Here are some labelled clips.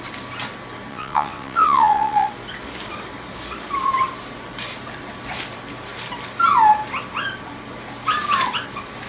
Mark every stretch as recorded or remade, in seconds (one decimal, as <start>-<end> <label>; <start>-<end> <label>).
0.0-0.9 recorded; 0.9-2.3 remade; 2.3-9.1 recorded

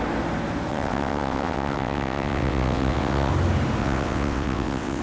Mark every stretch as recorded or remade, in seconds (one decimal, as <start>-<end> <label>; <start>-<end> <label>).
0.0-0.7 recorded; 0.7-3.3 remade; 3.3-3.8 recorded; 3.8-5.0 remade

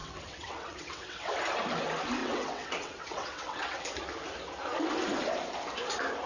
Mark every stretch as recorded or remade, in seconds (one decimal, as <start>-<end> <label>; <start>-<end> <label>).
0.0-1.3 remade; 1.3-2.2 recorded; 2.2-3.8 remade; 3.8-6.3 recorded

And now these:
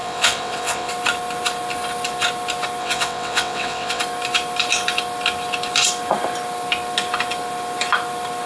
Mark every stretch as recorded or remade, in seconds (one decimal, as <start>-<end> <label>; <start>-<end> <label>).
0.0-0.9 remade; 0.9-2.8 recorded; 2.8-4.0 remade; 4.0-8.5 recorded

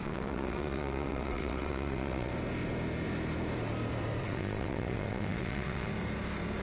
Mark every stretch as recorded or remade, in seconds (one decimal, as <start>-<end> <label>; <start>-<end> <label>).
0.0-2.3 remade; 2.3-4.2 recorded; 4.2-5.9 remade; 5.9-6.6 recorded